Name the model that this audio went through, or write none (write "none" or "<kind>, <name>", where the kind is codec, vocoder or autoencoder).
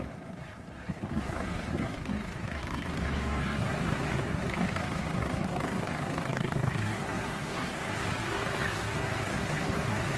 codec, SNAC